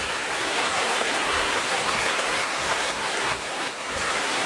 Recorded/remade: remade